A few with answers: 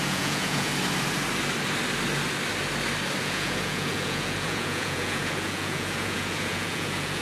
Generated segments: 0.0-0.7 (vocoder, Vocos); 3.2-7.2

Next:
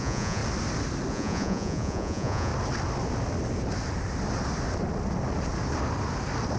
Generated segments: 0.0-0.4 (vocoder, Vocos); 1.1-2.5

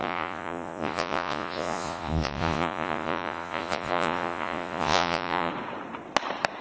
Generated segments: 0.0-5.5 (vocoder, Vocos)

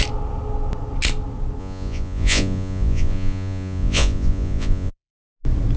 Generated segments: 1.6-5.1 (vocoder, Vocos)

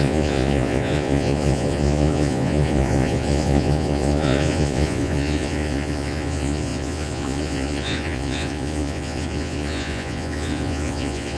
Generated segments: 0.0-11.4 (vocoder, Vocos)